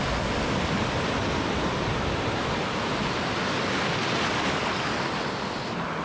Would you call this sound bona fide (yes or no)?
yes